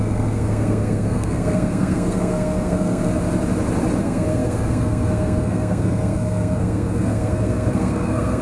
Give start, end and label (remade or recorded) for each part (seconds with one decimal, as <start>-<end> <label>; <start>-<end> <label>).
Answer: 0.0-3.1 remade; 3.1-4.0 recorded; 4.0-8.4 remade